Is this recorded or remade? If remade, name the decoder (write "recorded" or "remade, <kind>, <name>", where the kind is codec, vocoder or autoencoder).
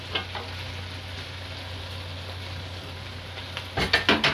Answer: recorded